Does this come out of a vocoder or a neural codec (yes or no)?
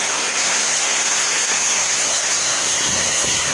yes